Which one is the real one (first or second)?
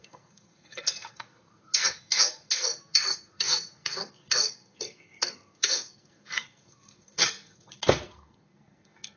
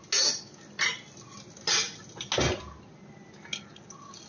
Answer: second